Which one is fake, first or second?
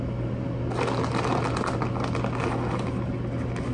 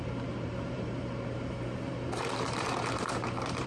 second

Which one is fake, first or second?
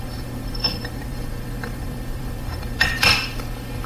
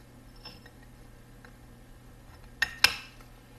first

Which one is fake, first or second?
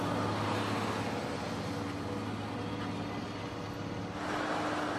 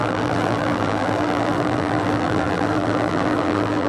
second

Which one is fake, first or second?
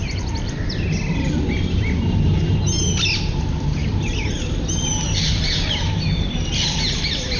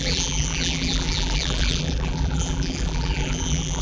second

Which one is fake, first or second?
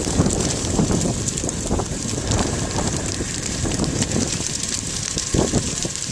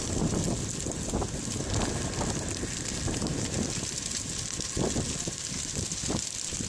first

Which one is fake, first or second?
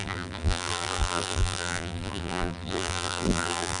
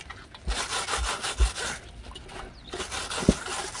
first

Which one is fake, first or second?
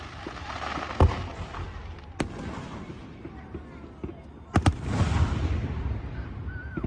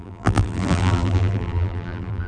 second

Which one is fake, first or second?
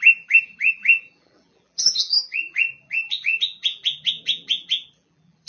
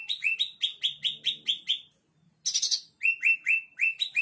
first